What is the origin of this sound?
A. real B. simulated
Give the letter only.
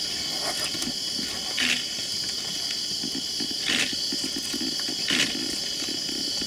A